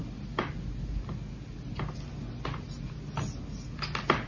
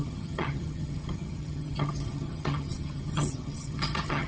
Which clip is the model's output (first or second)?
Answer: second